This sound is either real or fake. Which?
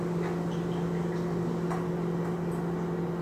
real